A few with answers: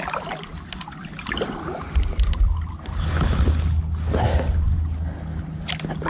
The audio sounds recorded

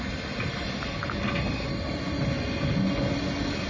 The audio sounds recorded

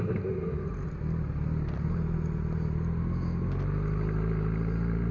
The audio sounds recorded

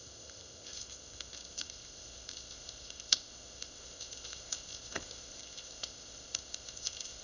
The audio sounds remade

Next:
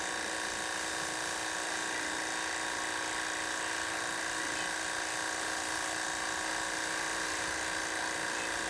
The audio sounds recorded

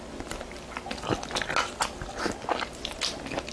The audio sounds recorded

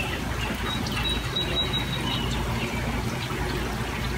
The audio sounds recorded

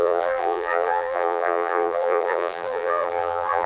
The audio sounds remade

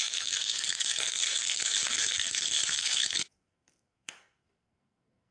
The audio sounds remade